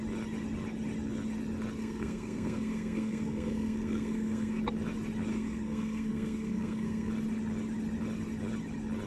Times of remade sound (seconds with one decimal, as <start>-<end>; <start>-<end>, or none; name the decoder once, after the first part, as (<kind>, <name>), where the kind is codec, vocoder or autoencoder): 1.8-4.6 (codec, SNAC); 5.3-7.1